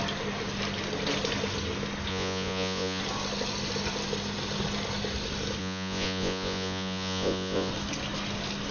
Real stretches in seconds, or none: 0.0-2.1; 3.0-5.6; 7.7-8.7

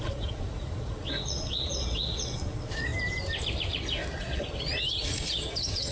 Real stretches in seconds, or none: 2.9-4.2

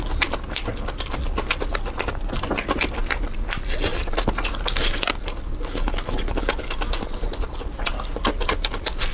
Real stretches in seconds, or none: 0.0-9.1